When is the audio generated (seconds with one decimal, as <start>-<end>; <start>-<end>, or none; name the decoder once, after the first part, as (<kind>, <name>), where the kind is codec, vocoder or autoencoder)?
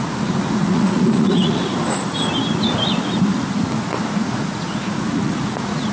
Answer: 0.0-1.7 (vocoder, Vocos); 4.1-5.9